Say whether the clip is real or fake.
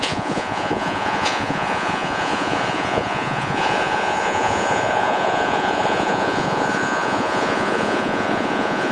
fake